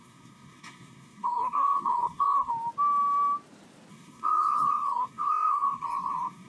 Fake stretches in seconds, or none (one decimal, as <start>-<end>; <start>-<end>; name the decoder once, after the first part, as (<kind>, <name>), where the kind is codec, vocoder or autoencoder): 0.0-2.5 (codec, SNAC); 3.9-6.5